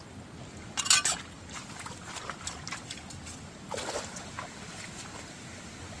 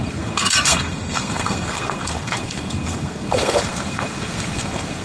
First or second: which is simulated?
second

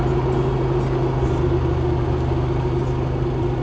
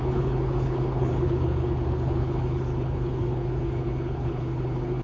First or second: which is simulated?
second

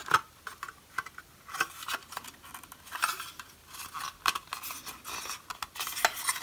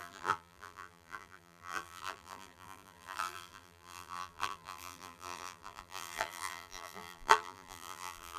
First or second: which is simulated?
second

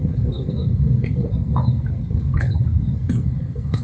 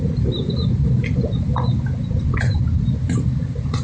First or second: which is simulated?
first